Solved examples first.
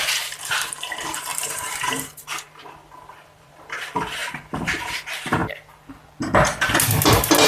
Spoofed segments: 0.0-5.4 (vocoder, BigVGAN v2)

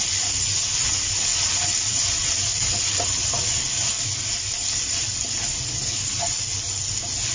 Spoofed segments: none

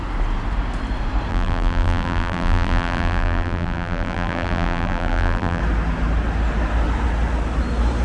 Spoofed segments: 1.3-5.6 (vocoder, BigVGAN v2)